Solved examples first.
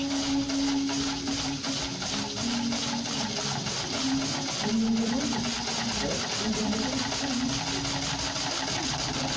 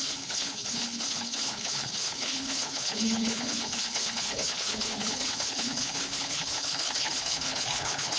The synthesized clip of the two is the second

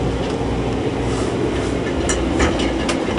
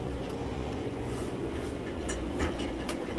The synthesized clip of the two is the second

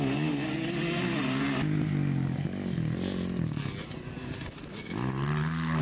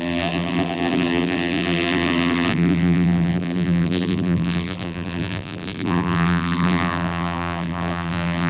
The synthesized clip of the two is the second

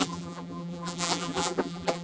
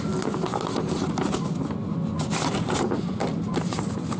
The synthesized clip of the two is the first